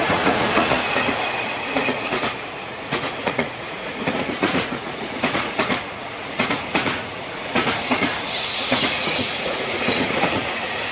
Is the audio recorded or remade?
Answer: remade